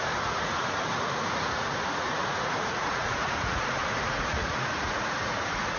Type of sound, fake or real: fake